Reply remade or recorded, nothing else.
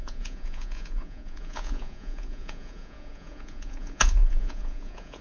remade